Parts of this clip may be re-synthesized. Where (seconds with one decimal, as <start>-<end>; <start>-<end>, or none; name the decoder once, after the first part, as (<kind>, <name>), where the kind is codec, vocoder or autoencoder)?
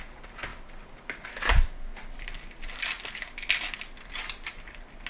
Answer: none